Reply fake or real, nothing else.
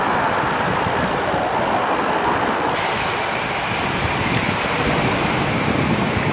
fake